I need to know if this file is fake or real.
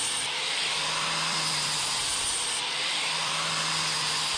fake